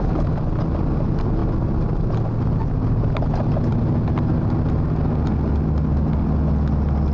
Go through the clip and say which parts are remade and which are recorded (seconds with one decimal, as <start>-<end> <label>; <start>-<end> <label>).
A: 0.0-7.1 recorded